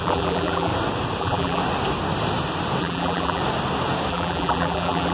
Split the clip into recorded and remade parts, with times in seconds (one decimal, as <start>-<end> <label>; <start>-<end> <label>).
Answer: 0.0-0.7 remade; 0.7-1.2 recorded; 1.2-1.6 remade; 1.6-2.8 recorded; 2.8-3.4 remade; 3.4-4.1 recorded; 4.1-5.1 remade